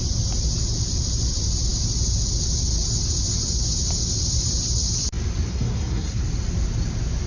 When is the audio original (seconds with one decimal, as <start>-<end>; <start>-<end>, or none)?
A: 0.0-5.5; 6.2-7.3